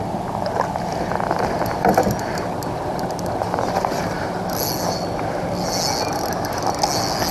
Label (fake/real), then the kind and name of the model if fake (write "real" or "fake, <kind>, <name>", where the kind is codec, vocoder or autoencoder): real